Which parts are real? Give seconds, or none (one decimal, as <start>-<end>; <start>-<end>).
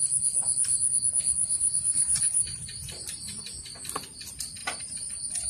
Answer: 0.0-1.4; 3.4-4.6; 5.1-5.5